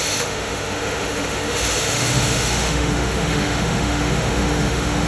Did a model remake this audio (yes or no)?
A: yes